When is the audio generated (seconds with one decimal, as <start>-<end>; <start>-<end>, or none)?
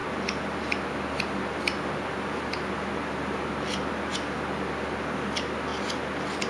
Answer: none